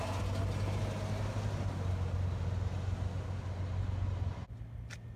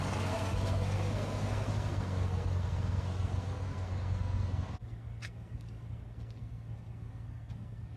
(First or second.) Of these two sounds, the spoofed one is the second